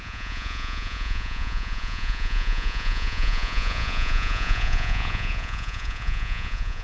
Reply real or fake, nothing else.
fake